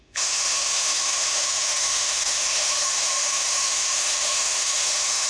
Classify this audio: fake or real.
fake